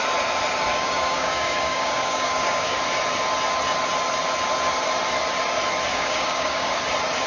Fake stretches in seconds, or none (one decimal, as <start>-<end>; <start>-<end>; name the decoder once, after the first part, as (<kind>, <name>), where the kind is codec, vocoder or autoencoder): 0.7-2.8 (codec, DAC); 5.9-6.8

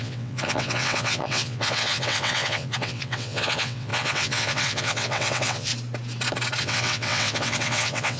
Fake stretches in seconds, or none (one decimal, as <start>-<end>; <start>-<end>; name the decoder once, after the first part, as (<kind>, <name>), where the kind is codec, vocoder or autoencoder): 0.0-5.7 (vocoder, WaveNeXt); 6.6-8.2

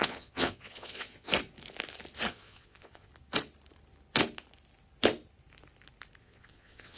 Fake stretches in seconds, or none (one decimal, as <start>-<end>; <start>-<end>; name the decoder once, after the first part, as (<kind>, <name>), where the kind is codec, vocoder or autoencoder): 0.0-1.3 (vocoder, Vocos); 2.3-3.1; 6.2-7.0